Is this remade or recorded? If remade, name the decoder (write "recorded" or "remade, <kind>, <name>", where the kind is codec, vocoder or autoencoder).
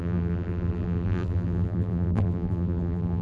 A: remade, vocoder, BigVGAN v2